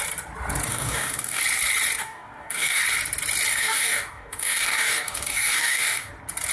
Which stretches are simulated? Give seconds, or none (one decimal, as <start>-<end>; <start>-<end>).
0.7-1.4; 2.0-2.8; 3.5-6.1